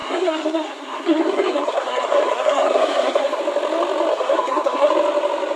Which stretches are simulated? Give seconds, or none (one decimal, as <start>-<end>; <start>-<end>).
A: 0.0-3.4; 4.1-4.9

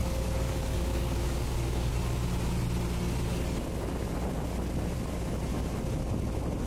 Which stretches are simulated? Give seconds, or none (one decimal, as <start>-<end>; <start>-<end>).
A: 0.0-1.9

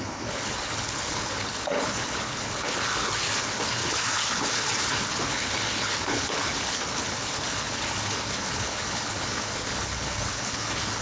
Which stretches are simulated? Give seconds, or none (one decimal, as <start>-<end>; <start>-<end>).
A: 0.0-11.0

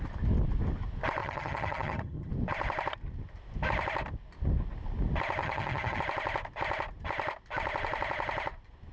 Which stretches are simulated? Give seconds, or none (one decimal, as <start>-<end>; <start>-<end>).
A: 1.2-2.3; 5.4-6.0

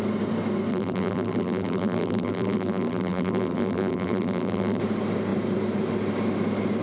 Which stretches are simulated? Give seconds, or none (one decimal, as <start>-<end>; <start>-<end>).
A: 0.7-4.8